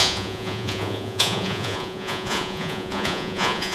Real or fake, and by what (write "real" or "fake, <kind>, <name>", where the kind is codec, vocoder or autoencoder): fake, vocoder, Vocos